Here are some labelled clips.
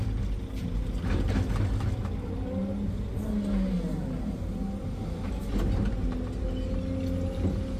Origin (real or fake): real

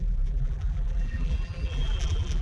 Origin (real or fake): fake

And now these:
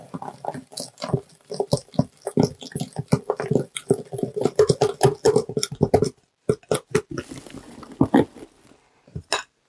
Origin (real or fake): real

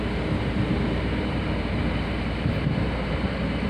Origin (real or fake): fake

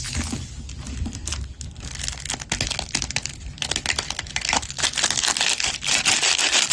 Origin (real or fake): real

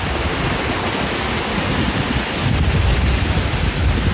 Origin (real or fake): real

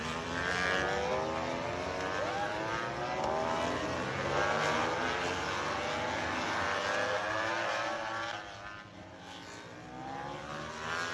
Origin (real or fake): real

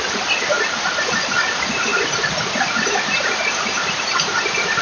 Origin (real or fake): fake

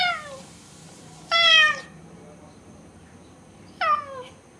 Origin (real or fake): fake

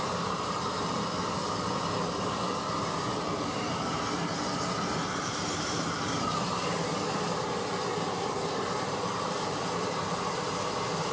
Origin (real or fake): fake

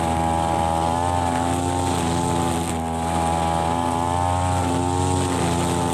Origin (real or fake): real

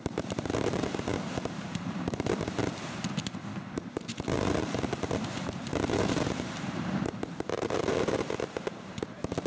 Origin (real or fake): fake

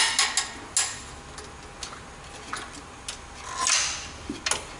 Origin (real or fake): real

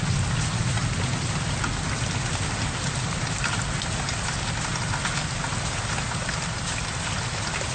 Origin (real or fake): real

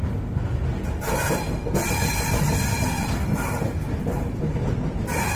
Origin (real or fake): real